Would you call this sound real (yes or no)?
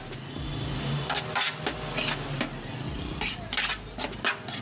yes